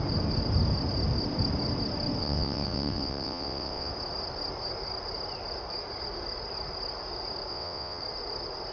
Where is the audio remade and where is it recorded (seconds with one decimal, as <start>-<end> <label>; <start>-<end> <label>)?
0.0-2.2 recorded; 2.2-3.9 remade; 3.9-7.5 recorded; 7.5-8.0 remade; 8.0-8.7 recorded